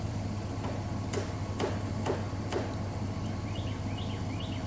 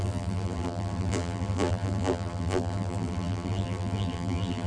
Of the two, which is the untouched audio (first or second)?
first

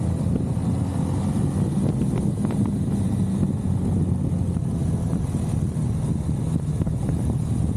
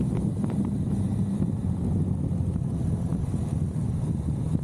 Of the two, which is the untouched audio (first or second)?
first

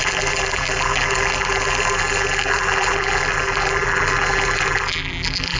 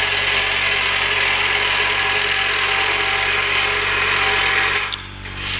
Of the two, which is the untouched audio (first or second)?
second